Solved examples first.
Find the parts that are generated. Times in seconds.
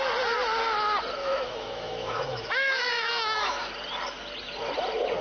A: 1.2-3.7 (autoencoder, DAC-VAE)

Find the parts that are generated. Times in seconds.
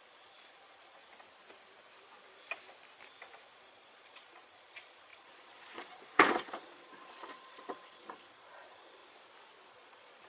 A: 0.0-1.0 (vocoder, Vocos); 3.5-9.0; 9.7-10.3